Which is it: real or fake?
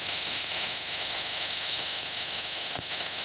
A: fake